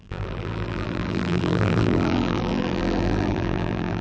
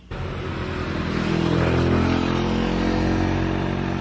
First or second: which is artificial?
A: first